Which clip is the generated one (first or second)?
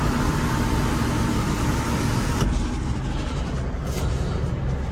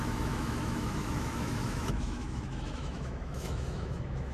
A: second